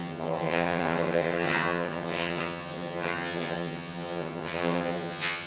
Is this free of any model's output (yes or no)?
no